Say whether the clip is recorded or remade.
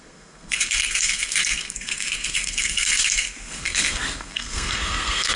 remade